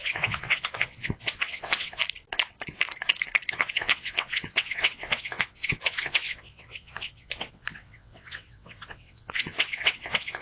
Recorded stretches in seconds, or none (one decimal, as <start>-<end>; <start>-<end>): 2.0-3.5